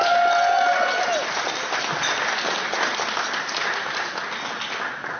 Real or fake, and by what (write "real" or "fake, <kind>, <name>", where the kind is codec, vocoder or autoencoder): real